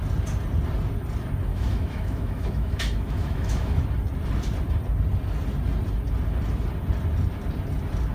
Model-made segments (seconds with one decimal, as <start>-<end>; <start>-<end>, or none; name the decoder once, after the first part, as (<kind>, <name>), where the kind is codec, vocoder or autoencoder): 1.5-3.8 (autoencoder, DAC-VAE)